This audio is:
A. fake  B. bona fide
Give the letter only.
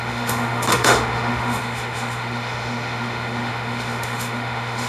A